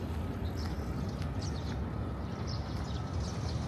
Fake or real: real